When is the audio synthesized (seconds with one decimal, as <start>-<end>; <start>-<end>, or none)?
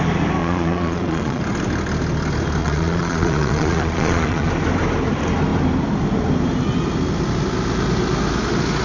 0.4-1.4; 2.6-4.5